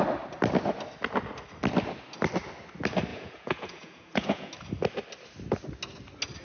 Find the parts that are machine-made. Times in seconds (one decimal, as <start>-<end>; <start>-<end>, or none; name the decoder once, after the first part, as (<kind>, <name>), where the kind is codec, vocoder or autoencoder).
3.1-4.5 (vocoder, Vocos)